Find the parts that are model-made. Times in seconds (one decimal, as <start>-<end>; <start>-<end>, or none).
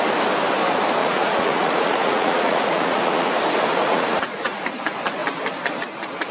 1.0-3.3; 3.7-4.7